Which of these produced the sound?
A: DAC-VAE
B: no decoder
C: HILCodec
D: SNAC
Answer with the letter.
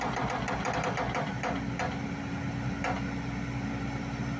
B